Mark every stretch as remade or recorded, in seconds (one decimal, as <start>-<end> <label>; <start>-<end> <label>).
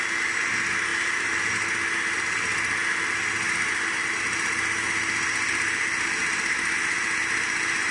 0.0-0.9 recorded; 0.9-1.5 remade; 1.5-7.9 recorded